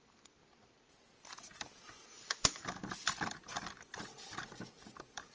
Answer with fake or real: fake